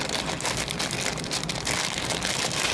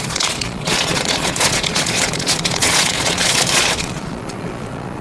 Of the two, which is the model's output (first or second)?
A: second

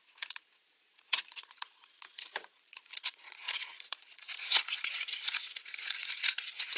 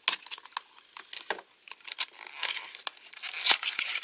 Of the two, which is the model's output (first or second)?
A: first